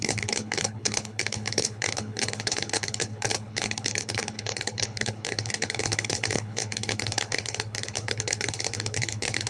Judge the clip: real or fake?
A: fake